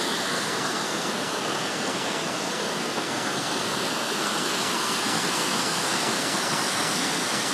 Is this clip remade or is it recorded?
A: remade